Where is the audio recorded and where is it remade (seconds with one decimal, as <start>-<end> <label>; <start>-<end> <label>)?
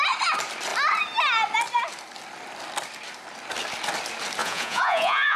0.0-4.4 recorded; 4.4-5.4 remade